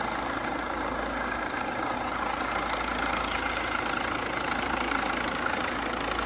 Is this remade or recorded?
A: recorded